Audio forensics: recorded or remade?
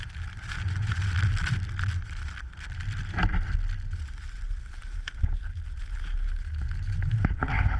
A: recorded